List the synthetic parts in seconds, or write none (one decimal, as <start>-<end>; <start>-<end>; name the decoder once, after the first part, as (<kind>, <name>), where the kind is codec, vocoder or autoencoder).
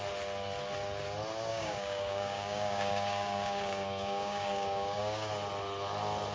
1.5-5.3 (codec, DAC)